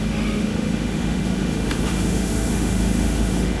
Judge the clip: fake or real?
fake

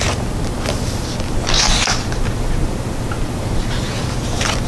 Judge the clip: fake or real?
real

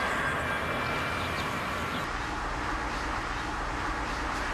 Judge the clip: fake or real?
real